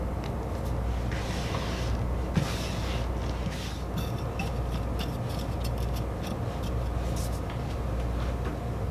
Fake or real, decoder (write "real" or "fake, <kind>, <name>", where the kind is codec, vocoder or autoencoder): real